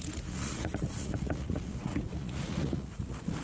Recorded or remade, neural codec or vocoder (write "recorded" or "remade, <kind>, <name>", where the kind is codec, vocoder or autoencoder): remade, vocoder, Vocos